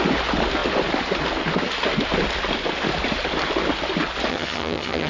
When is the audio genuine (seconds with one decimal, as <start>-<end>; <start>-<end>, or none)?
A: 0.0-4.3